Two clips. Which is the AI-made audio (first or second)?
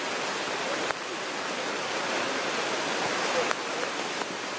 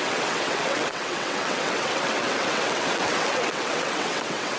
second